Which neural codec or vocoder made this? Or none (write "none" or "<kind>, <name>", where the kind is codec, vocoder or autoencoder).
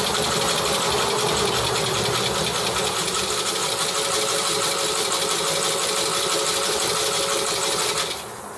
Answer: none